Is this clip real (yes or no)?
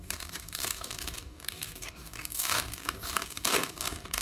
no